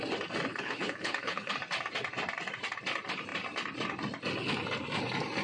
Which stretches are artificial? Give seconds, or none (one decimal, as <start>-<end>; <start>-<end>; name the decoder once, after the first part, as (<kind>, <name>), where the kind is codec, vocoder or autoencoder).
0.5-1.5 (codec, HILCodec)